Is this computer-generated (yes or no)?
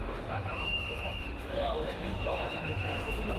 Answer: yes